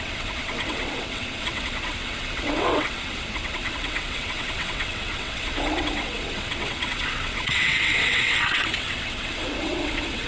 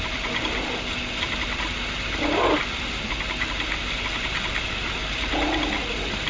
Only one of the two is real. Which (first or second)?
second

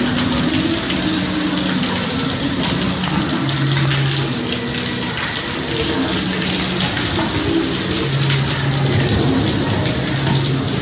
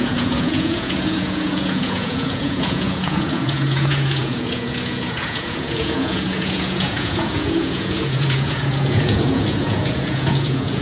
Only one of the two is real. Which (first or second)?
first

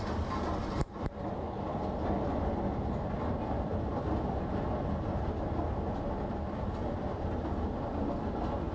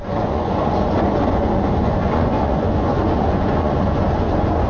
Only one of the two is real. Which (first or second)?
first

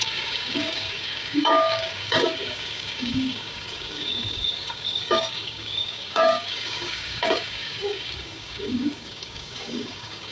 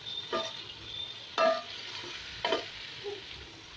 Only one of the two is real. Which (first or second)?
second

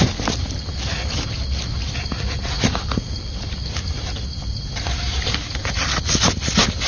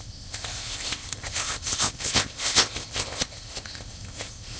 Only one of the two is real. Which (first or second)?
first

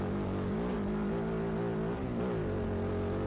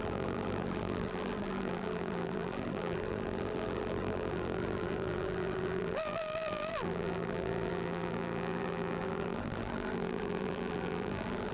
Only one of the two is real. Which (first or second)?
first